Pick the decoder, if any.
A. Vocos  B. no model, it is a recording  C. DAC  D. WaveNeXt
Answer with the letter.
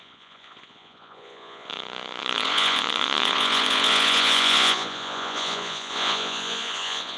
A